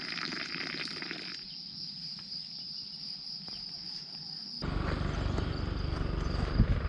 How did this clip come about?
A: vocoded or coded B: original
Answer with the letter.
B